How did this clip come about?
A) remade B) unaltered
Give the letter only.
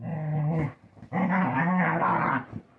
B